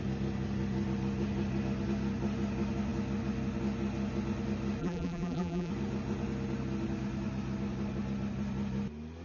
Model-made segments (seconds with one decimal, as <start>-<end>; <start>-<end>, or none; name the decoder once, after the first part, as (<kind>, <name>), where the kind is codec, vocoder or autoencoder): 4.8-5.7 (vocoder, BigVGAN v2)